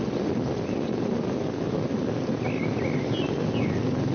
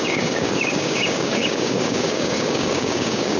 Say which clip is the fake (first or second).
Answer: second